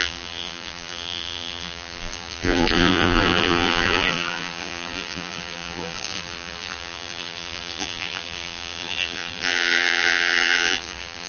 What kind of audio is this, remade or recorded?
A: remade